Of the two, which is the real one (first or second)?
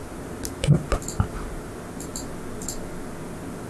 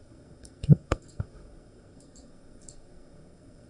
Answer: first